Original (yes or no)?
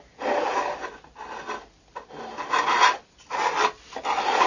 yes